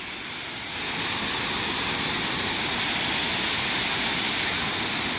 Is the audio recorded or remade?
recorded